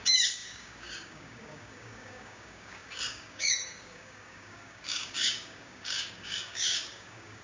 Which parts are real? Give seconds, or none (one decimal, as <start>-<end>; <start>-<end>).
none